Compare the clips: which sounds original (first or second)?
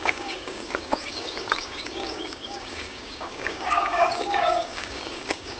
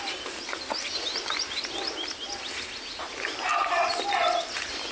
second